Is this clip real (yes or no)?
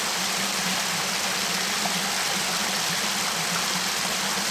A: yes